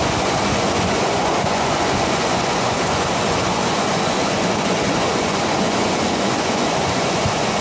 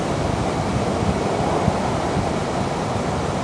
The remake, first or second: first